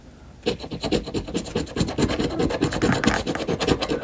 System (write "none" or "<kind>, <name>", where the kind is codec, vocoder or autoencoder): none